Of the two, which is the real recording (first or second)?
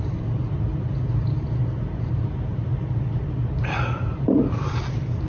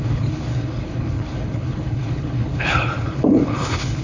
first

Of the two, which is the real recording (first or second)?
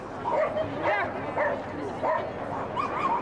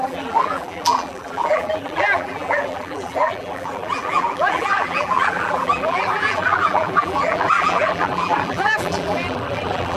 first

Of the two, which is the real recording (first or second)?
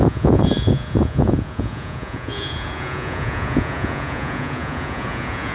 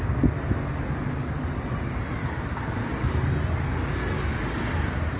second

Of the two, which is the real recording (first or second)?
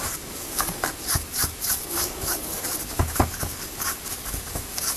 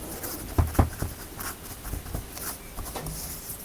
second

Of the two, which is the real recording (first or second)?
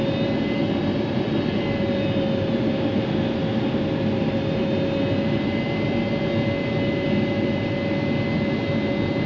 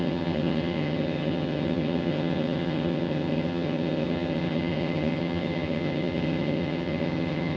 first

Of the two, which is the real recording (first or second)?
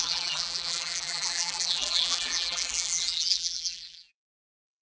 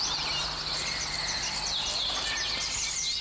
second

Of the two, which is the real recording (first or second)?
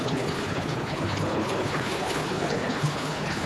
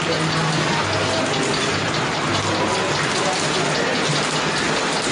second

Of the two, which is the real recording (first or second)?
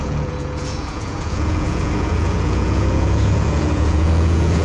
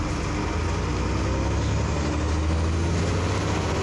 second